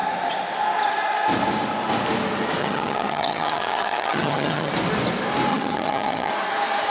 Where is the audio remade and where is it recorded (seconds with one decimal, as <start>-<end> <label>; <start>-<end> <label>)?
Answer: 0.0-2.6 recorded; 2.6-4.7 remade; 4.7-5.5 recorded; 5.5-6.3 remade; 6.3-6.9 recorded